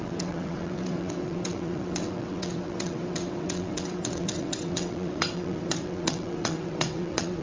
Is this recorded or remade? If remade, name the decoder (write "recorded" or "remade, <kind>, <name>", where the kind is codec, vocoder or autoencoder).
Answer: remade, vocoder, WaveNeXt